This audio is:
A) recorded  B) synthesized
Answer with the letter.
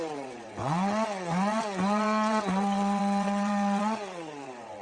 B